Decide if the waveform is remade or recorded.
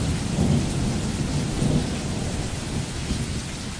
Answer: recorded